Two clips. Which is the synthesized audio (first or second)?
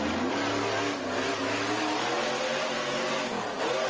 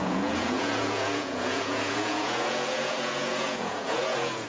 second